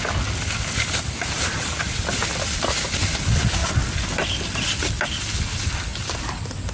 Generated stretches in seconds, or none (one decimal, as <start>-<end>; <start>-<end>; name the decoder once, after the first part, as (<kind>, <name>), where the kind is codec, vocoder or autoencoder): none